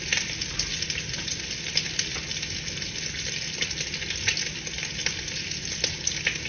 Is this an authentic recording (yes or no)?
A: yes